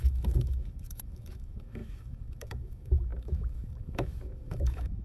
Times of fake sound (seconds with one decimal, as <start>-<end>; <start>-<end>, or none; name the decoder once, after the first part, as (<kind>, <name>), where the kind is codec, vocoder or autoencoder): 0.0-5.0 (autoencoder, DAC-VAE)